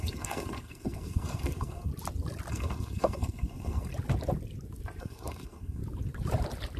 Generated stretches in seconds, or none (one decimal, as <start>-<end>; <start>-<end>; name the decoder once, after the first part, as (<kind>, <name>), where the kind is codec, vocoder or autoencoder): 0.0-1.9 (codec, SNAC); 2.5-3.9; 5.0-5.8